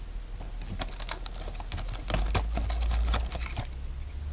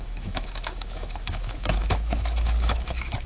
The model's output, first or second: second